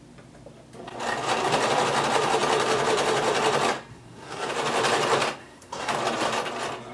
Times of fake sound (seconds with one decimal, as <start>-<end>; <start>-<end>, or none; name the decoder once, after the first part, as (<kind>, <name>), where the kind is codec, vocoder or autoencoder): 3.9-4.5 (codec, SNAC); 5.4-5.9